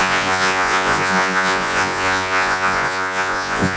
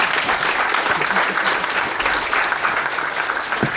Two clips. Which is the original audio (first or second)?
second